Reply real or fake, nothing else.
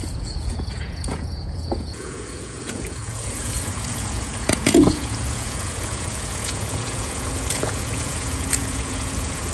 fake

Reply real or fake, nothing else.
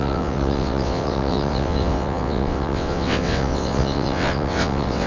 fake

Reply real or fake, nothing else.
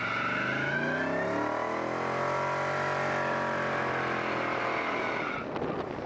real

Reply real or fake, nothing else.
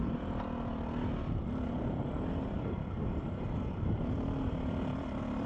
fake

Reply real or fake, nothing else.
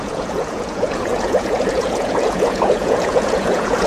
fake